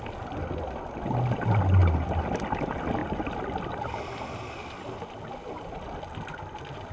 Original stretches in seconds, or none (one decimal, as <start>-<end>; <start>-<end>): 0.0-6.9